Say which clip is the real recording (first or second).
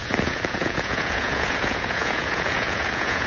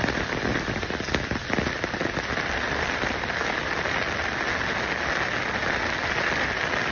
second